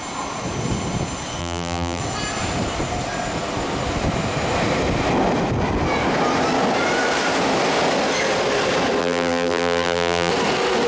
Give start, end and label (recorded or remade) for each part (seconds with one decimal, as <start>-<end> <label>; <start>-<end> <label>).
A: 0.0-1.4 recorded; 1.4-2.0 remade; 2.0-9.0 recorded; 9.0-10.3 remade; 10.3-10.9 recorded